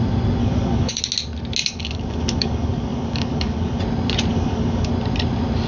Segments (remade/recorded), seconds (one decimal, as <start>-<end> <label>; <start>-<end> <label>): 0.0-0.4 recorded; 0.4-1.0 remade; 1.0-1.6 recorded; 1.6-3.8 remade; 3.8-4.3 recorded; 4.3-4.9 remade; 4.9-5.7 recorded